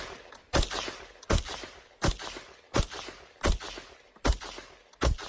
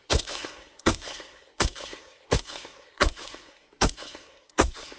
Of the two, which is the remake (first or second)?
second